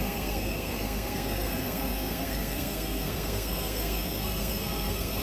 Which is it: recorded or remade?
remade